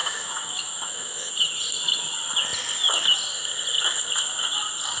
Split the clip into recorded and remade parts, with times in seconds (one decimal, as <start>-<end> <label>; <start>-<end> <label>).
0.0-1.3 remade; 1.3-5.0 recorded